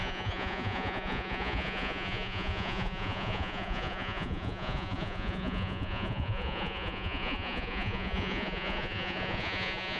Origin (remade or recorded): remade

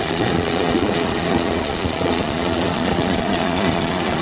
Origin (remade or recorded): remade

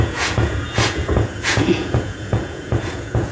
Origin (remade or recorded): remade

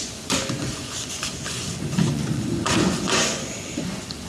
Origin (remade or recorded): remade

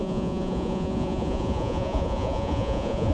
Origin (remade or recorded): remade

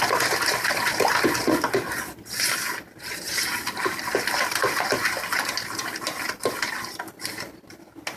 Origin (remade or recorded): recorded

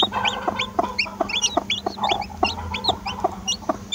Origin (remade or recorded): recorded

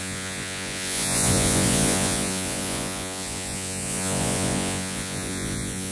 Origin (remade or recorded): remade